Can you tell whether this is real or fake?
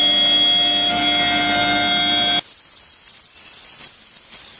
real